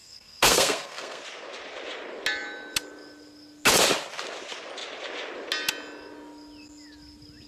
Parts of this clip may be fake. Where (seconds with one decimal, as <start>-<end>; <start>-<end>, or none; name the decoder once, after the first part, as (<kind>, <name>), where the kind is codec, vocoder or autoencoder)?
0.0-1.2 (codec, SNAC)